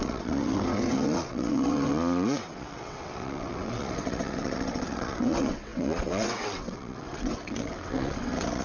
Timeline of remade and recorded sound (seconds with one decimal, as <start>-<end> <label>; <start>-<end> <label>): 0.0-8.6 remade

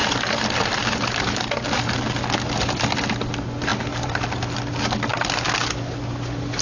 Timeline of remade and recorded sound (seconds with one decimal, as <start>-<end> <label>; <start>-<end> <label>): 0.0-6.6 recorded

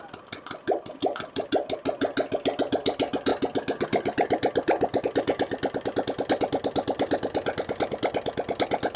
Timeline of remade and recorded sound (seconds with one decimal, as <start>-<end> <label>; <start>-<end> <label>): 0.0-9.0 recorded

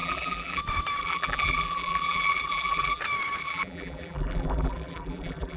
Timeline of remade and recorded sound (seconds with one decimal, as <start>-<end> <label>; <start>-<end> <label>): 0.0-0.6 remade; 0.6-1.0 recorded; 1.0-3.0 remade; 3.0-3.4 recorded; 3.4-5.6 remade

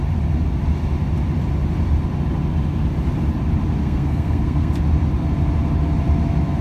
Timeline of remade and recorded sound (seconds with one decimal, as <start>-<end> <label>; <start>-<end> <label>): 0.0-3.8 recorded; 3.8-4.7 remade; 4.7-6.6 recorded

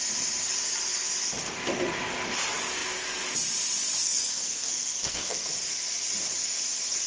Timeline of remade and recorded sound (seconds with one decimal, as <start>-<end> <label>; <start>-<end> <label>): 0.0-4.0 recorded; 4.0-5.5 remade; 5.5-7.1 recorded